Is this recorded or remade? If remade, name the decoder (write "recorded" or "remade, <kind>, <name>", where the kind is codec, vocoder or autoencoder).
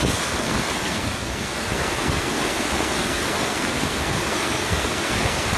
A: remade, codec, SNAC